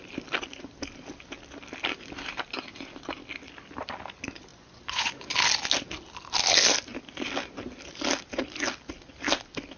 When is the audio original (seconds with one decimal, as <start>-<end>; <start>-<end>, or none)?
0.0-4.5; 5.3-9.8